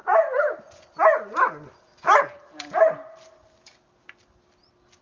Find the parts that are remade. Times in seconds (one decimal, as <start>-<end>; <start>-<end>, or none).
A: 0.0-0.6